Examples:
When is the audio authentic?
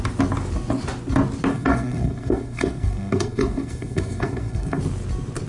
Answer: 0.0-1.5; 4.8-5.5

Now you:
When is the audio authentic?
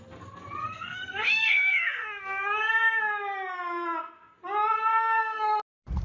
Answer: 0.0-0.6; 3.0-4.9; 5.6-6.0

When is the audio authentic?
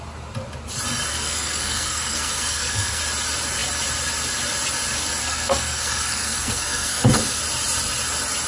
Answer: 0.0-1.1; 3.0-5.2; 7.4-8.5